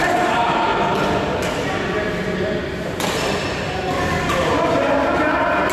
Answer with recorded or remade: recorded